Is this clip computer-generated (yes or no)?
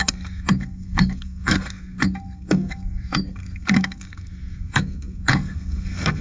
yes